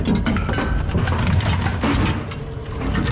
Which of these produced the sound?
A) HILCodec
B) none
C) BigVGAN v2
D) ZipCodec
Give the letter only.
B